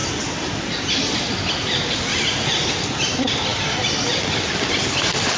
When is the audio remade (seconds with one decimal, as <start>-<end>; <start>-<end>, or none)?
0.0-0.6